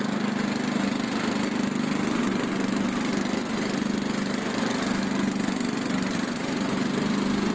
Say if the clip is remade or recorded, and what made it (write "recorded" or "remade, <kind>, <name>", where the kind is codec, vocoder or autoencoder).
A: recorded